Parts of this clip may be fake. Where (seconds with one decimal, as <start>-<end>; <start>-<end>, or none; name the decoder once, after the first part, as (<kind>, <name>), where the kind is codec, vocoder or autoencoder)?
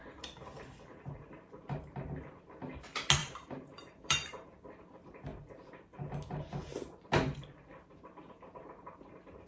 3.2-4.6 (vocoder, BigVGAN v2)